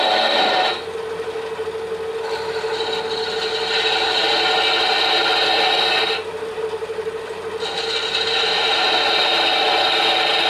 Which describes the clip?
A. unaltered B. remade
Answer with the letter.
A